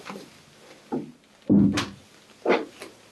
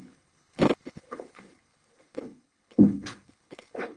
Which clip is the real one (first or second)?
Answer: first